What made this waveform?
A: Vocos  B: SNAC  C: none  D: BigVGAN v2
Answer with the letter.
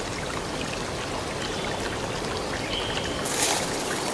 C